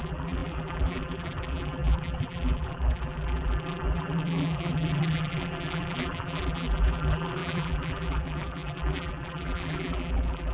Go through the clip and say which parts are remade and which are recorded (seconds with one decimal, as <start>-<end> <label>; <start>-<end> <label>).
0.0-10.5 remade